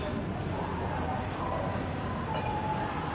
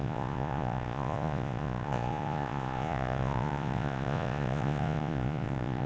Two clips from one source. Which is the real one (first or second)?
first